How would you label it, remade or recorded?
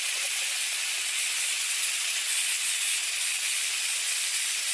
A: remade